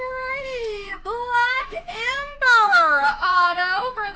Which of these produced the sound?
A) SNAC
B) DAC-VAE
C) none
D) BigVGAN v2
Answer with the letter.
B